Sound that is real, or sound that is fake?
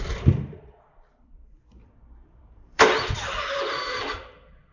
fake